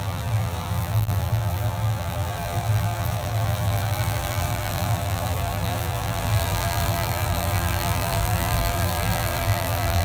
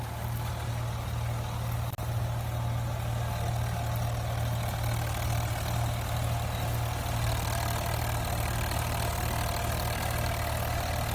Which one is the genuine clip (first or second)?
second